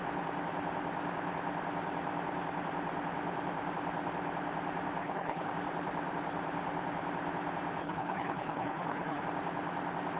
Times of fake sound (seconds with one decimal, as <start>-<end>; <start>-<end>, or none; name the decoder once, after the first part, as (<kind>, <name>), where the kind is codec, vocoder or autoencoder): 5.0-5.5 (codec, HILCodec); 7.8-9.2